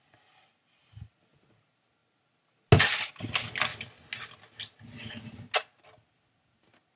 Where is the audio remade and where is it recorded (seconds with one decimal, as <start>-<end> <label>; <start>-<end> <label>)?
0.0-7.0 recorded